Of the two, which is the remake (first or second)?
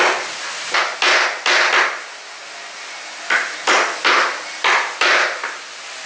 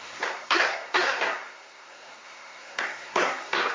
second